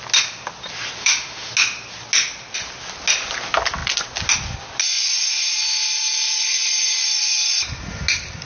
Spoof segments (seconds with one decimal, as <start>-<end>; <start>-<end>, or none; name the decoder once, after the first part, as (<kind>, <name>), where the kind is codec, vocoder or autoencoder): 1.0-1.5 (autoencoder, DAC-VAE)